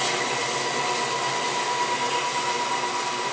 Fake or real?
real